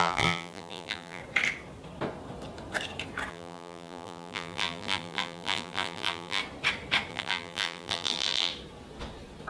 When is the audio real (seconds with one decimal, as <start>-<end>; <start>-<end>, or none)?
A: 1.2-3.3; 6.4-7.1; 8.5-9.5